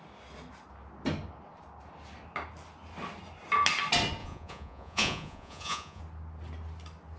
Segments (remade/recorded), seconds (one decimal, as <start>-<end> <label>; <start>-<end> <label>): 0.0-4.2 recorded; 4.2-6.0 remade; 6.0-7.2 recorded